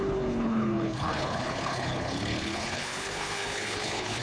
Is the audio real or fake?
fake